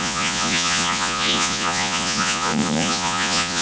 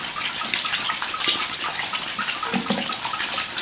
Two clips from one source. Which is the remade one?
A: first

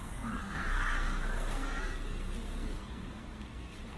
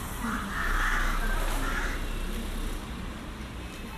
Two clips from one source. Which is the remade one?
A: first